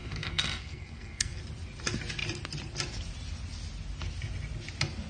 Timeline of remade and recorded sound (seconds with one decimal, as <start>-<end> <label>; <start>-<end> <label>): 0.0-1.4 remade; 1.4-5.1 recorded